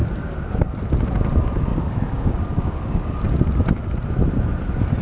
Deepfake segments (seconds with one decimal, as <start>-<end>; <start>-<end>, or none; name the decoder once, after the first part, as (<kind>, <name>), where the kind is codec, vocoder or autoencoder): 1.7-3.1 (codec, DAC)